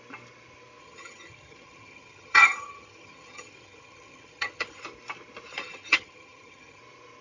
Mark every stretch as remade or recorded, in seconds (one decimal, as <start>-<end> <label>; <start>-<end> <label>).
0.0-0.8 recorded; 0.8-4.8 remade; 4.8-5.5 recorded; 5.5-6.8 remade; 6.8-7.2 recorded